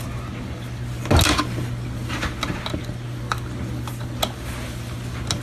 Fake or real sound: real